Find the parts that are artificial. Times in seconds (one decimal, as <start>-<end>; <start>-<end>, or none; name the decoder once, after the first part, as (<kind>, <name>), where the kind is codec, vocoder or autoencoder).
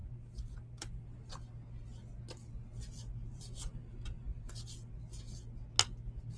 0.0-1.3 (vocoder, BigVGAN v2); 3.3-4.5